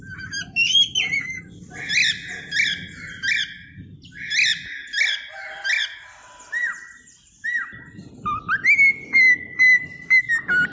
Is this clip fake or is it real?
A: real